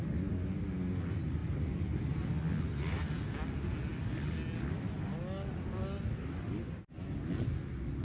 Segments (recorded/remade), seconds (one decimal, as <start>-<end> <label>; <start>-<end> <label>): 0.0-8.0 recorded